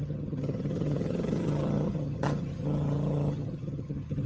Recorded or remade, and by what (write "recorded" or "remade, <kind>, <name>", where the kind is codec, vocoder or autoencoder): remade, vocoder, HiFi-GAN